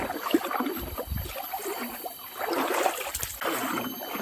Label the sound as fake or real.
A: real